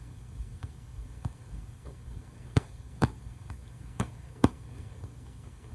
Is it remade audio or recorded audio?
remade